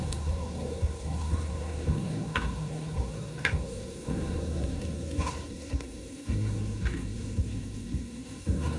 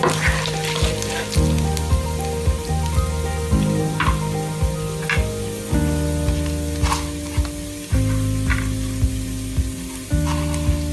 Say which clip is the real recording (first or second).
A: second